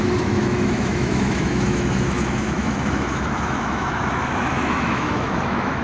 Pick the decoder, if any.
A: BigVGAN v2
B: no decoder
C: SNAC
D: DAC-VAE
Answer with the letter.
D